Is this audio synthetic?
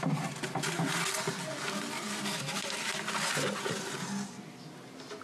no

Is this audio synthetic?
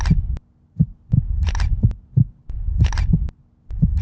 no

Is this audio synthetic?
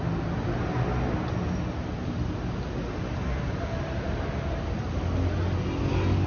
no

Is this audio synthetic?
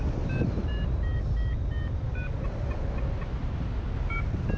no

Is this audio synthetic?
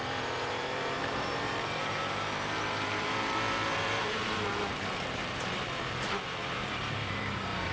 yes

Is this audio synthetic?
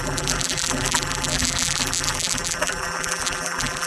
yes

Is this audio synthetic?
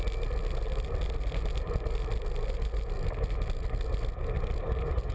no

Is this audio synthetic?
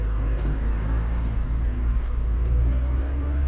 yes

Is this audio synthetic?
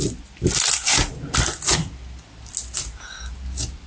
no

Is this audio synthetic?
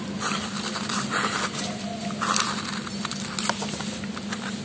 no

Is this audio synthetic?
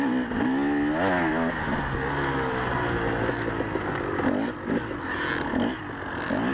no